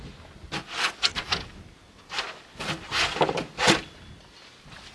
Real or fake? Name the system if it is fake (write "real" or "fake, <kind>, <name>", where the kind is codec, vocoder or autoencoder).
real